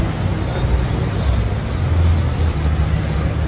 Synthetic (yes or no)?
no